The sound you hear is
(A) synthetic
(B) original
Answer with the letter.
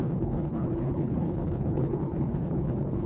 A